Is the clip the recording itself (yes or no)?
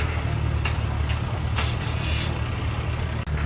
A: yes